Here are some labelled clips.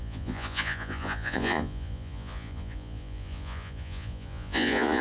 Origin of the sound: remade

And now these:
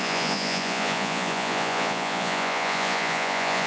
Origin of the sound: remade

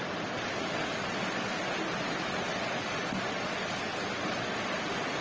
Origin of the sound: recorded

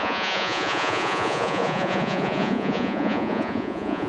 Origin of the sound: remade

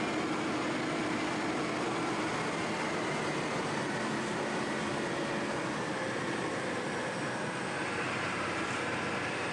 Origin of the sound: recorded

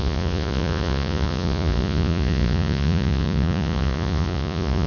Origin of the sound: remade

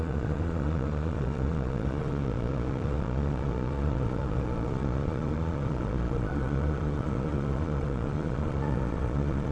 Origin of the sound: remade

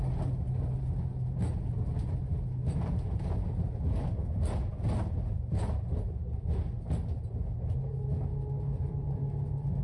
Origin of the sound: recorded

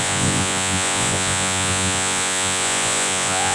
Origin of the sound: remade